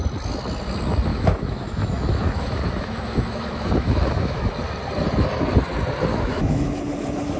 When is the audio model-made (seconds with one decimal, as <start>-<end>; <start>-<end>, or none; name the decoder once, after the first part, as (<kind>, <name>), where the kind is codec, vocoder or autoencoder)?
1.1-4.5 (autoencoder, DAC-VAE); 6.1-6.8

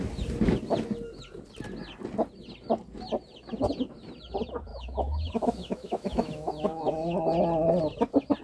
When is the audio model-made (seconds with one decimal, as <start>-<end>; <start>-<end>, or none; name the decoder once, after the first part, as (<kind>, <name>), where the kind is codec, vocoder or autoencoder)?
4.7-6.9 (autoencoder, DAC-VAE)

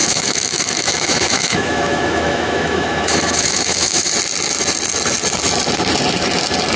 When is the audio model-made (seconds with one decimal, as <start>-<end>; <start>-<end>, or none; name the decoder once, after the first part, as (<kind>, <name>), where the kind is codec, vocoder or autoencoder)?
0.0-4.1 (autoencoder, DAC-VAE)

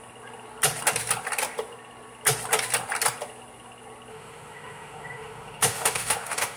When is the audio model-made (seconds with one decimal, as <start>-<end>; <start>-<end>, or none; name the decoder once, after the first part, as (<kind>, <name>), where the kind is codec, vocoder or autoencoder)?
4.1-6.6 (autoencoder, DAC-VAE)

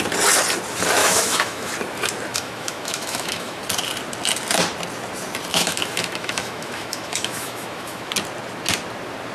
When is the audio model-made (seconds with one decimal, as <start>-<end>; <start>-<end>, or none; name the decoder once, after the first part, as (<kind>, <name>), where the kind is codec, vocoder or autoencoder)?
1.0-1.7 (autoencoder, DAC-VAE); 2.3-3.6; 5.5-8.1

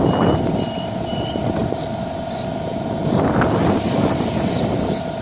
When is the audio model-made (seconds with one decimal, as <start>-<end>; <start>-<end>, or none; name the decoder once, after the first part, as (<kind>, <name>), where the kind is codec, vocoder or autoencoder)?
none